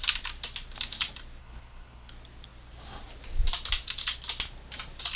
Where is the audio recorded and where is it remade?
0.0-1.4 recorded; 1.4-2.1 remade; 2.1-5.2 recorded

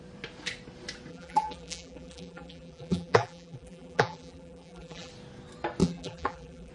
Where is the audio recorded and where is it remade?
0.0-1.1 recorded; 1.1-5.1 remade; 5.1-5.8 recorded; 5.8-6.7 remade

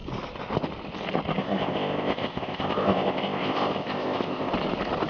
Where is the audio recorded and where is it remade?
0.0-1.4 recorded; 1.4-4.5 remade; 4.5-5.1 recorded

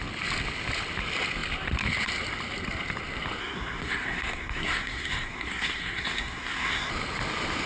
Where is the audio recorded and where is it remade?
0.0-3.4 recorded; 3.4-6.9 remade; 6.9-7.7 recorded

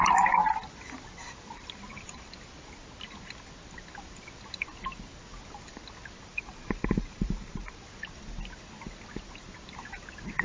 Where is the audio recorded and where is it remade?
0.0-6.3 recorded; 6.3-7.8 remade; 7.8-10.4 recorded